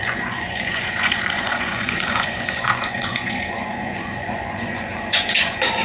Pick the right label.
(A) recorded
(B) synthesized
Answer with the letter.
B